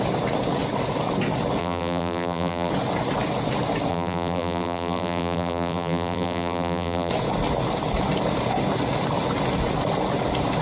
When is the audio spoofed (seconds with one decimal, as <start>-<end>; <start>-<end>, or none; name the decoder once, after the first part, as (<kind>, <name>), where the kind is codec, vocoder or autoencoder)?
1.6-2.7 (vocoder, BigVGAN v2); 3.9-7.1